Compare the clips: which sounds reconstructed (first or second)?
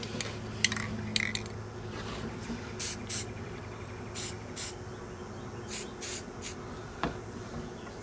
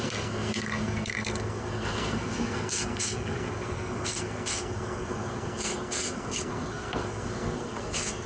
second